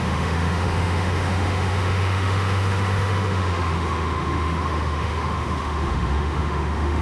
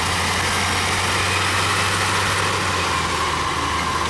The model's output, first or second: first